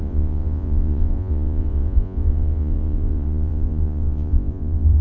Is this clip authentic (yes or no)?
no